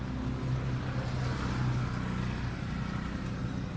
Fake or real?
real